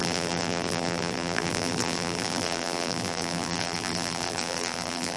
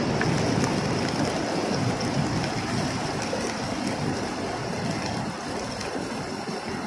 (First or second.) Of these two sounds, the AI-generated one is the first